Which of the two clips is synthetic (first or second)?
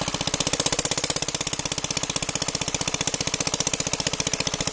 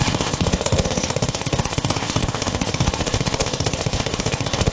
second